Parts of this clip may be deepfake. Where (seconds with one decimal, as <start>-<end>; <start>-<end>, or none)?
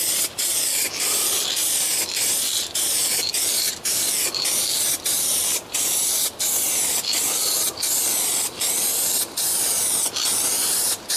10.3-11.2